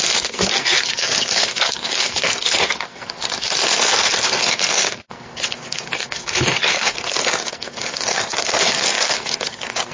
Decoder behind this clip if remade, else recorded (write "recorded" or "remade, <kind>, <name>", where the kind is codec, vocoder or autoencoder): remade, codec, SNAC